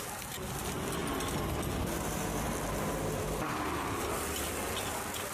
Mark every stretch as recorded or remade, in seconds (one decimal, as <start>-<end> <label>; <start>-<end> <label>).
0.0-5.3 recorded